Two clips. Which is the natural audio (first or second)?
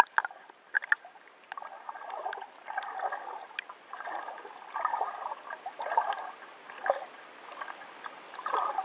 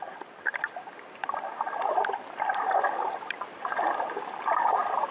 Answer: first